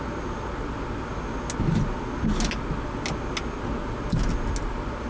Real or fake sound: real